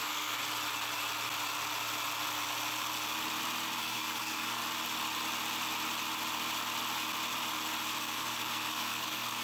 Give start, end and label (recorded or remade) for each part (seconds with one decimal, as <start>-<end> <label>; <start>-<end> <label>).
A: 0.0-0.4 remade; 0.4-3.8 recorded; 3.8-4.6 remade; 4.6-8.0 recorded; 8.0-9.4 remade